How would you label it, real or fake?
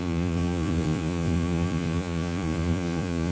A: fake